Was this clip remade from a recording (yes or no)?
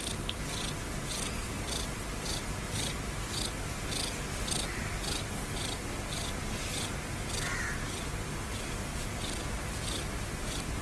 no